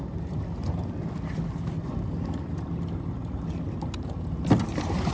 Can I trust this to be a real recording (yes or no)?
yes